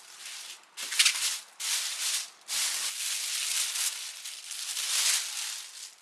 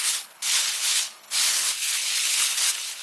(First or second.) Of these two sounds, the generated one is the second